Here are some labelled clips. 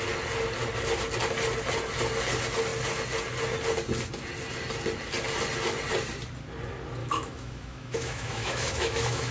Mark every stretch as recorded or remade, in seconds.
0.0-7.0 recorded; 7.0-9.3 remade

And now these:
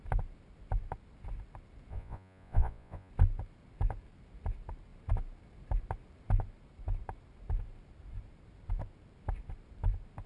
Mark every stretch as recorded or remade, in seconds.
0.0-1.9 recorded; 1.9-3.1 remade; 3.1-10.3 recorded

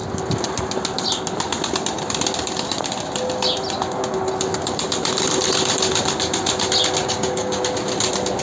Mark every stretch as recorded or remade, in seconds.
0.0-7.0 recorded; 7.0-7.6 remade; 7.6-8.4 recorded

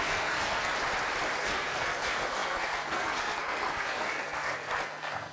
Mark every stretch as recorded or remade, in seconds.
0.0-0.7 remade; 0.7-1.4 recorded; 1.4-5.3 remade

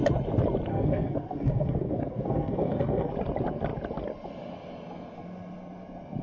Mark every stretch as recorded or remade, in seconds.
0.0-0.7 recorded; 0.7-3.1 remade; 3.1-6.2 recorded

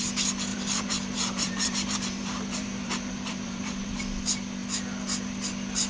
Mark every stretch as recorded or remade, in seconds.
0.0-0.5 recorded; 0.5-4.0 remade; 4.0-5.9 recorded

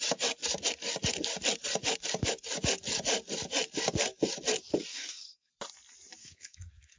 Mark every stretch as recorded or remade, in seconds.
0.0-4.9 recorded; 4.9-5.5 remade; 5.5-6.2 recorded; 6.2-7.0 remade

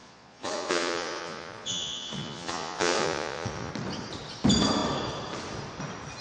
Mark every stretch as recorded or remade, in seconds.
0.0-3.7 remade; 3.7-6.2 recorded